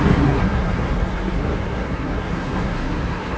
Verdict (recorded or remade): remade